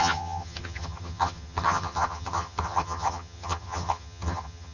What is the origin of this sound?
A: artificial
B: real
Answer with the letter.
A